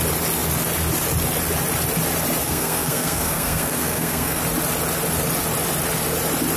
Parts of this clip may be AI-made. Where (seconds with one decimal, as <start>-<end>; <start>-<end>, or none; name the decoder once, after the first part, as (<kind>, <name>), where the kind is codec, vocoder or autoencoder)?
2.4-4.4 (codec, SNAC)

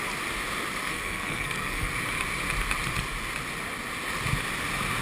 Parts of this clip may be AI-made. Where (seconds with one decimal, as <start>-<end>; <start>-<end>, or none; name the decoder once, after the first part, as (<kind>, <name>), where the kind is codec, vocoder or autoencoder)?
0.8-1.9 (codec, SNAC)

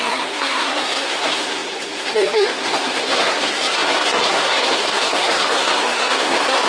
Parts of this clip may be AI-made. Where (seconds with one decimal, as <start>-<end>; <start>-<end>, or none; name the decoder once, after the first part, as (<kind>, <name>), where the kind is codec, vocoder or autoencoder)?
0.0-6.7 (codec, SNAC)

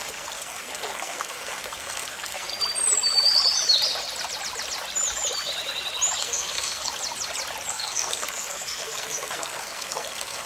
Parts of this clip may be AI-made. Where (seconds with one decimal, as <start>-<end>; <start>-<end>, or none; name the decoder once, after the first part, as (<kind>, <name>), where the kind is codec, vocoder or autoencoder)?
0.0-2.5 (codec, SNAC); 6.2-6.9; 7.7-10.5